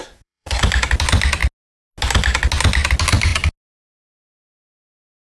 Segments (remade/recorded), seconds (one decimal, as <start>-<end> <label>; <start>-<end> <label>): 0.0-0.6 remade; 0.6-5.2 recorded

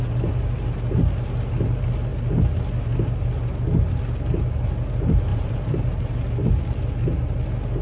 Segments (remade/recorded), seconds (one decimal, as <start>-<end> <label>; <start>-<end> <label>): 0.0-5.3 recorded; 5.3-6.1 remade; 6.1-7.8 recorded

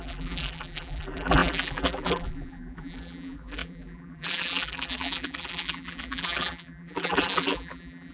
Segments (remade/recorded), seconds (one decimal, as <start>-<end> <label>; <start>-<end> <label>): 0.0-8.1 remade

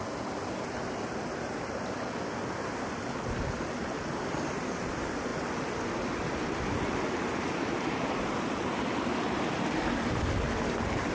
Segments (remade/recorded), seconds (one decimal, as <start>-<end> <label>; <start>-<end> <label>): 0.0-11.1 recorded

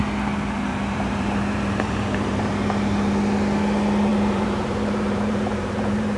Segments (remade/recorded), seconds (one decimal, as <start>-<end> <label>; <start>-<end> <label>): 0.0-0.7 recorded; 0.7-2.5 remade; 2.5-4.1 recorded; 4.1-6.2 remade

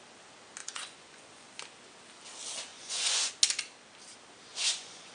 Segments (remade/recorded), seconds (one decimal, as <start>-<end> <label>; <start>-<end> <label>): 0.0-0.6 recorded; 0.6-1.5 remade; 1.5-2.7 recorded; 2.7-3.3 remade; 3.3-4.5 recorded; 4.5-5.1 remade

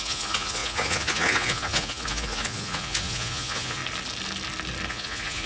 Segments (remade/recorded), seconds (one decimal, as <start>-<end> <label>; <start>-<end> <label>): 0.0-3.8 remade; 3.8-4.9 recorded; 4.9-5.5 remade

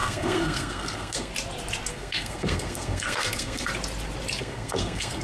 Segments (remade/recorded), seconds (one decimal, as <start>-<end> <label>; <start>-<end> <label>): 0.0-1.3 remade; 1.3-1.9 recorded; 1.9-3.7 remade; 3.7-4.4 recorded; 4.4-5.2 remade